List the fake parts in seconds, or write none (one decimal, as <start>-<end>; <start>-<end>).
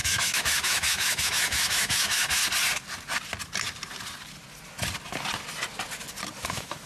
0.0-2.4; 6.5-6.9